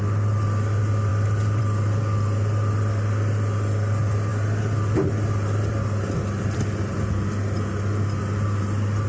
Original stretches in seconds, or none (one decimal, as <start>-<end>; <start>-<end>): 0.0-9.1